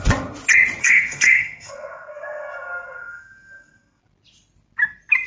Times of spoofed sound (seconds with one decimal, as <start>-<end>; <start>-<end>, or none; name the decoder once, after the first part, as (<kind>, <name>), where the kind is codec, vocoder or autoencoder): 0.8-4.0 (codec, SNAC)